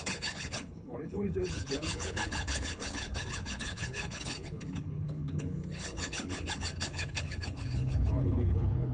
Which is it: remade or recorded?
remade